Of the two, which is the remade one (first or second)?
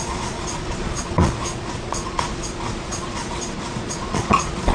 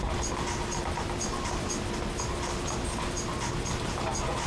first